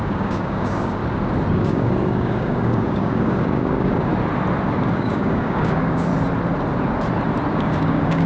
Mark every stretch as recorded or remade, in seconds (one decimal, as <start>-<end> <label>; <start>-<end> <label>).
0.0-1.0 remade; 1.0-1.5 recorded; 1.5-4.1 remade; 4.1-4.9 recorded; 4.9-6.1 remade; 6.1-7.5 recorded; 7.5-8.3 remade